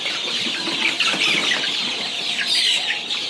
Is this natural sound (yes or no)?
no